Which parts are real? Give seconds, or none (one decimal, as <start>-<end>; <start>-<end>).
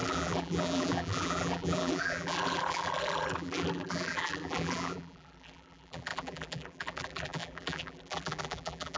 none